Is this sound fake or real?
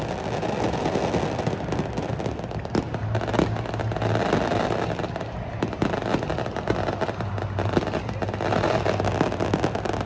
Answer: real